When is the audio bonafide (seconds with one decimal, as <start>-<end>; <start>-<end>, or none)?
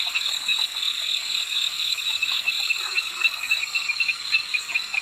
none